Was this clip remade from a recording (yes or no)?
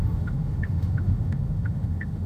yes